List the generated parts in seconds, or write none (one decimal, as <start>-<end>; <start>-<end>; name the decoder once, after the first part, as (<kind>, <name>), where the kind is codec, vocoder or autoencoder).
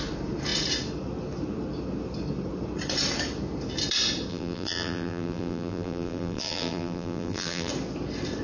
4.3-7.7 (vocoder, BigVGAN v2)